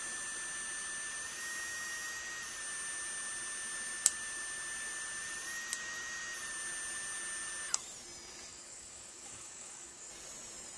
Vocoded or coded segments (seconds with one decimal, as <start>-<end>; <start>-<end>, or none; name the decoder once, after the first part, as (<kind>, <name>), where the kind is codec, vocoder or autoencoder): 8.5-10.1 (codec, DAC)